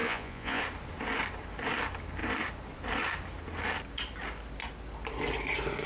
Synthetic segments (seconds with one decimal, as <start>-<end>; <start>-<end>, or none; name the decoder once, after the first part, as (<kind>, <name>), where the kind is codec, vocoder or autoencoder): 0.0-0.6 (vocoder, Vocos)